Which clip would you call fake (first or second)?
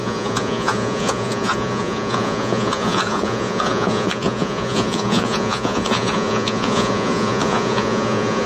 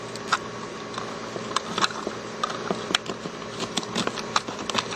first